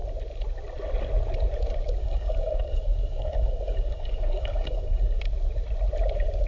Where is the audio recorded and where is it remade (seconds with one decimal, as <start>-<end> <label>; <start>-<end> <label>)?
0.0-2.0 recorded; 2.0-5.2 remade; 5.2-6.5 recorded